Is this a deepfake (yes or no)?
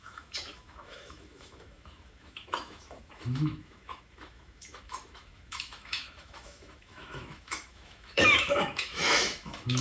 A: yes